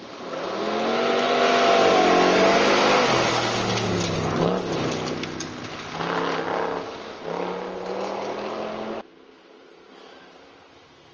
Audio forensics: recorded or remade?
recorded